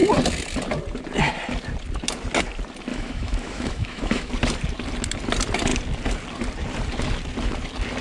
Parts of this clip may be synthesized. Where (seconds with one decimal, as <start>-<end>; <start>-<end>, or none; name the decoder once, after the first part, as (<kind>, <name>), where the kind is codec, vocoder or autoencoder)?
2.9-4.3 (autoencoder, DAC-VAE)

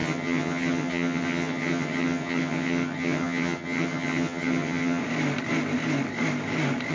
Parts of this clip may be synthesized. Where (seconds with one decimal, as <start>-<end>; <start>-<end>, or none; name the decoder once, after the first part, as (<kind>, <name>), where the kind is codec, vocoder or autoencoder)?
0.0-5.0 (vocoder, HiFi-GAN)

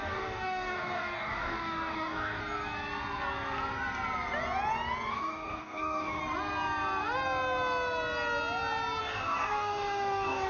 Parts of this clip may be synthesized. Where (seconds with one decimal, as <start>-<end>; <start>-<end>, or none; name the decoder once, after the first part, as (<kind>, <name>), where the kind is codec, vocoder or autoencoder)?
0.0-2.4 (codec, DAC); 5.1-6.2; 9.0-10.5

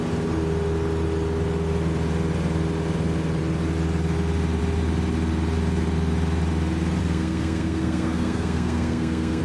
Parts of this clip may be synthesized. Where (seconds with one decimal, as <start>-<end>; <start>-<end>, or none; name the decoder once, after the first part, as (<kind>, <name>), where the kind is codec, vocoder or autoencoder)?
7.0-9.4 (codec, SNAC)

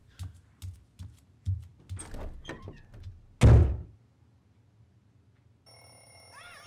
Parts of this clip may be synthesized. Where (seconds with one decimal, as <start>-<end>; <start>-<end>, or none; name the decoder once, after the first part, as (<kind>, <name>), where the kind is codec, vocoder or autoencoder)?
none

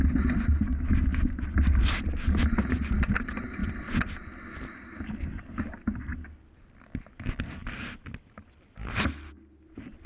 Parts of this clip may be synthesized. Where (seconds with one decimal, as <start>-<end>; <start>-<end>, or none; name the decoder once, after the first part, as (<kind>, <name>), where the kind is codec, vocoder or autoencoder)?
none